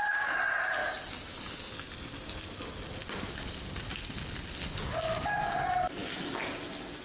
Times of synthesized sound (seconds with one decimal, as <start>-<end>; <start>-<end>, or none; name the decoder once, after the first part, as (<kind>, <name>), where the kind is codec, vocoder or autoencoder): none

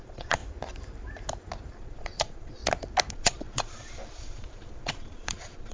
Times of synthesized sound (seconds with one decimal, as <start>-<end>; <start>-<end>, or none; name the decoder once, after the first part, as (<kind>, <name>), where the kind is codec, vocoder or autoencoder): 0.0-0.4 (vocoder, Vocos); 1.7-2.6; 3.1-5.7

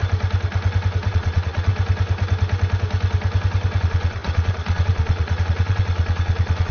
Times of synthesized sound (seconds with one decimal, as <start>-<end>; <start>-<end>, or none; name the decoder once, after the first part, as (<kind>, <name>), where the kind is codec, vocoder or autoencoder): 1.1-1.7 (vocoder, Vocos); 3.8-6.7

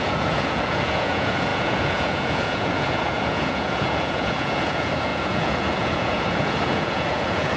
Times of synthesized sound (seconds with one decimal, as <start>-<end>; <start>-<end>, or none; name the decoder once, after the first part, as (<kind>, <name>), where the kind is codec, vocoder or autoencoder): 0.0-7.6 (vocoder, Vocos)

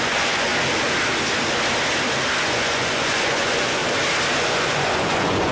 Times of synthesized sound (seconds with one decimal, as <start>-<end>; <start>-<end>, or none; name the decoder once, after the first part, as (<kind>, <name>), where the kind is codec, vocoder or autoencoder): 0.0-0.5 (vocoder, Vocos); 2.4-3.8; 4.4-5.5

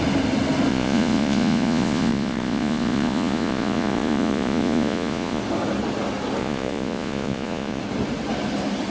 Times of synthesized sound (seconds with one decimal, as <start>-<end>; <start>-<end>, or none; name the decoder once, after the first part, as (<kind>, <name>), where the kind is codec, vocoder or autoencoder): 0.7-5.4 (vocoder, Vocos); 6.4-7.8

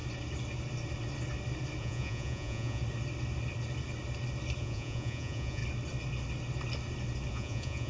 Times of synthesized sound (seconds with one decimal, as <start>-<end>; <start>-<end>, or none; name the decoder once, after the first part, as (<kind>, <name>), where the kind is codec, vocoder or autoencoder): 1.8-2.8 (vocoder, Vocos); 4.6-5.6; 7.3-7.9